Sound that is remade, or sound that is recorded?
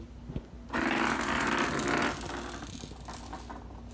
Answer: recorded